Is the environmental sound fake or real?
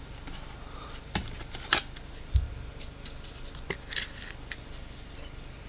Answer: real